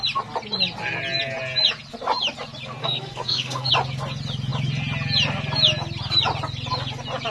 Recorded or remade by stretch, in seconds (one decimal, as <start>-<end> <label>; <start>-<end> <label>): 0.0-2.8 recorded; 2.8-3.7 remade; 3.7-7.3 recorded